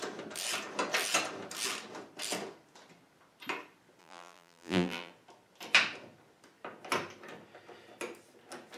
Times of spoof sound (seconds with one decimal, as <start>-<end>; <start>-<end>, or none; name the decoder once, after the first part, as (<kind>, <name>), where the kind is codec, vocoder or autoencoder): 4.0-5.1 (vocoder, BigVGAN v2)